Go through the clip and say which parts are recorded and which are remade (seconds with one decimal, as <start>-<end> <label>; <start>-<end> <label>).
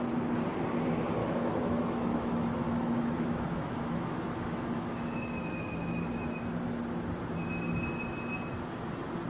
0.0-1.2 recorded; 1.2-6.0 remade; 6.0-9.3 recorded